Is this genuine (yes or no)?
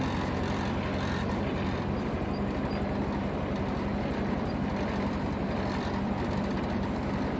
yes